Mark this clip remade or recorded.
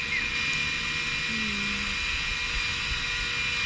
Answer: recorded